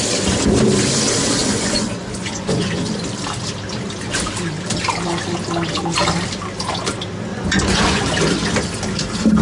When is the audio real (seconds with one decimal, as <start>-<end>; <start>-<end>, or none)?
0.0-1.4; 3.0-7.3; 8.0-9.4